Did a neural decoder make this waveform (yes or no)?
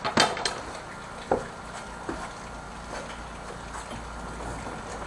no